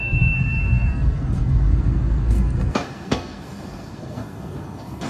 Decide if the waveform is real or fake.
fake